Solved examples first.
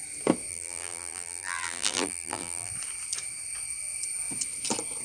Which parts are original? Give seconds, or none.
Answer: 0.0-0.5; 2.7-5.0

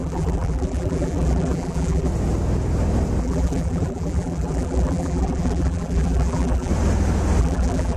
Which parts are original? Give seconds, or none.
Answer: 2.1-3.2; 6.7-7.4

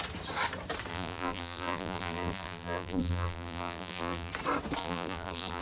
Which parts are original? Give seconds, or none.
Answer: 0.0-0.9; 4.3-4.8

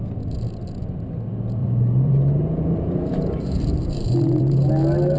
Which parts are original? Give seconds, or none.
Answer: 0.0-1.6; 4.7-5.2

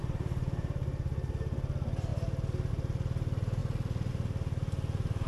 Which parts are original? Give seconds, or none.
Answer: 1.3-5.3

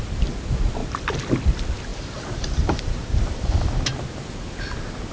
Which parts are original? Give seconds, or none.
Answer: 0.0-1.9; 3.8-5.1

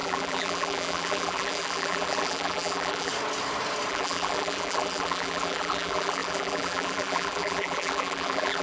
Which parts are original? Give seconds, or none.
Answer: 3.1-3.9

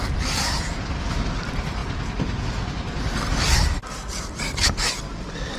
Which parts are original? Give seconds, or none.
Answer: 1.8-3.2